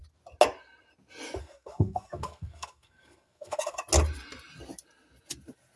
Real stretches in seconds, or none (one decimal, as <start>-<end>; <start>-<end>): 0.0-1.4; 3.8-5.8